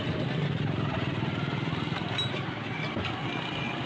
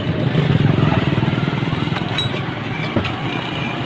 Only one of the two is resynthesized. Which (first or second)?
second